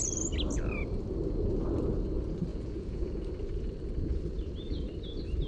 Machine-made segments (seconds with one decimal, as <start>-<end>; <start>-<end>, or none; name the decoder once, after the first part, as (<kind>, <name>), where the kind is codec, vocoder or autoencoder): 2.5-3.3 (vocoder, Vocos)